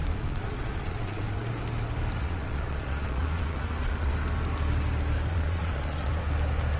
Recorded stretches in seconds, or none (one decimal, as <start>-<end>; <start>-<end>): 1.5-2.2; 4.1-5.3; 6.2-6.8